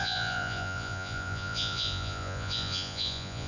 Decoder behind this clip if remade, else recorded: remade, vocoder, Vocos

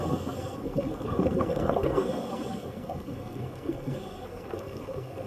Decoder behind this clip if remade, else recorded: remade, codec, SNAC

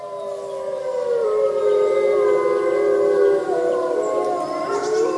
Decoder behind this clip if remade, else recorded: recorded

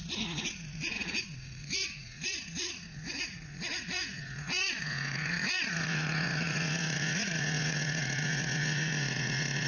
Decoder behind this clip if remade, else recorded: remade, vocoder, Vocos